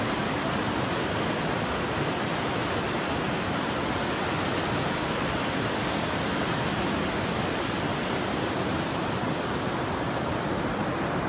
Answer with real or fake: real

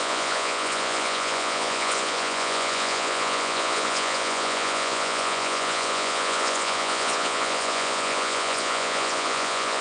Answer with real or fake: fake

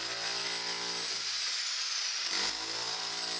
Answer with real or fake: real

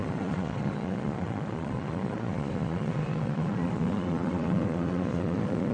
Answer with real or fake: fake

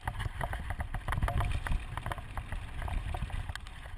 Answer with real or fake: real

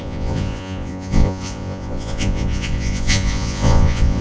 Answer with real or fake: fake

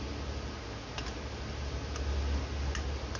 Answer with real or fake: real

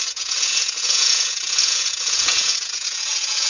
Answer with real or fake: fake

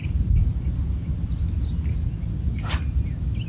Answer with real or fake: real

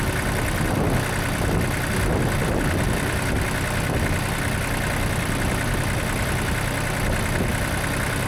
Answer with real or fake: real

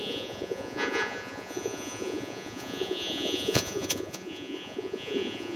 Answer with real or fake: fake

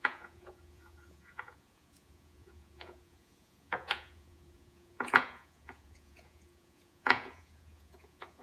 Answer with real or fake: fake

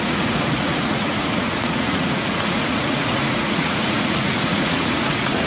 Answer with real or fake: fake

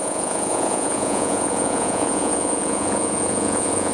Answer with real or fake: fake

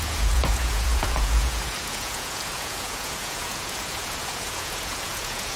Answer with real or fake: fake